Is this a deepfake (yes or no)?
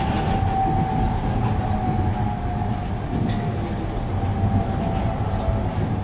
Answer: no